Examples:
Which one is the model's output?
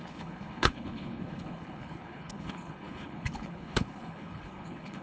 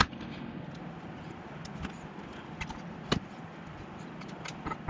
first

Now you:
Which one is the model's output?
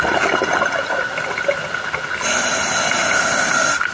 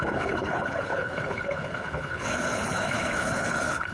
second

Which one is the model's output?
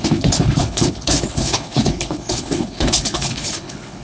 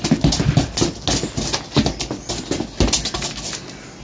first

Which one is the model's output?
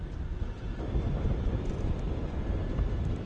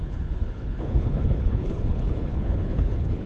second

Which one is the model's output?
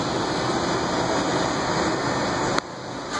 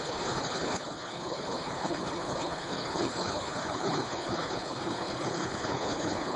second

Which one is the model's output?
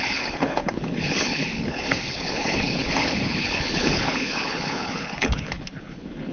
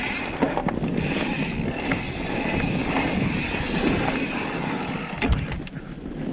first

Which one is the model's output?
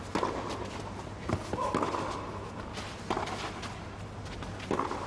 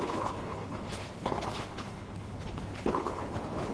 second